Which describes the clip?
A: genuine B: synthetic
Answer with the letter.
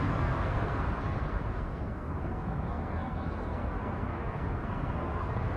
B